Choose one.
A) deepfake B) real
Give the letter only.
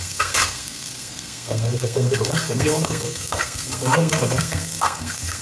A